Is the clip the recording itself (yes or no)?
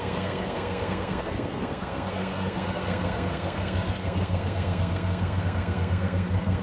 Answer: no